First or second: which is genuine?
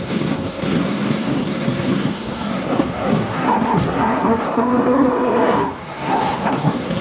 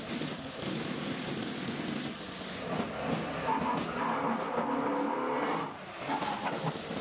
second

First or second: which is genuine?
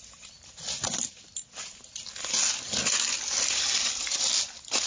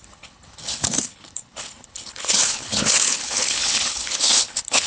first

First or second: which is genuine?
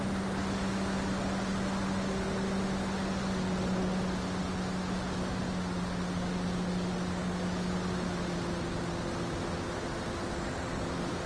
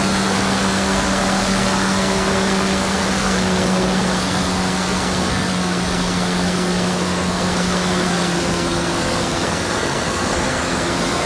first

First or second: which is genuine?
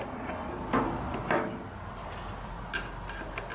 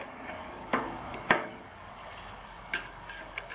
first